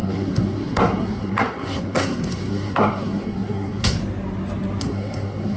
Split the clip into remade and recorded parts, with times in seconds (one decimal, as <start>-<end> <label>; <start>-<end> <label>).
0.0-4.0 remade; 4.0-4.8 recorded; 4.8-5.6 remade